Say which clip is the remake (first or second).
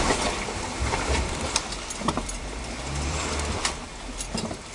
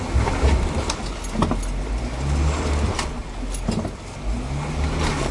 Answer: first